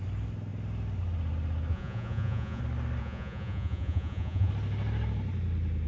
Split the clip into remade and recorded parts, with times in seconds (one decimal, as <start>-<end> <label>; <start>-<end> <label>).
0.0-1.7 recorded; 1.7-2.6 remade; 2.6-3.0 recorded; 3.0-4.5 remade; 4.5-5.9 recorded